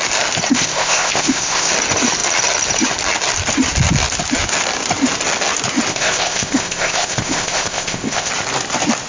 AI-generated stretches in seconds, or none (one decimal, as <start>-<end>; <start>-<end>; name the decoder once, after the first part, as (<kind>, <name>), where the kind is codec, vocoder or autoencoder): 0.5-1.7 (codec, ZipCodec); 5.9-8.3